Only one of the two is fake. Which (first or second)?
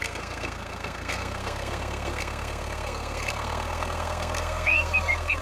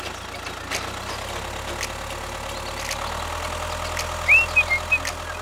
first